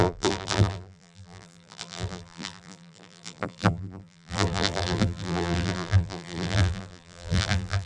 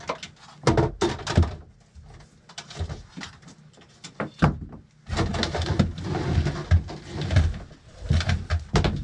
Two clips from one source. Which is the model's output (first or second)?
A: first